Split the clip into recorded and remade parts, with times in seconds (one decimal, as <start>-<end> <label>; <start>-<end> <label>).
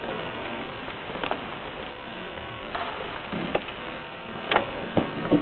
0.0-0.8 remade; 0.8-1.9 recorded; 1.9-2.7 remade; 2.7-3.8 recorded; 3.8-5.4 remade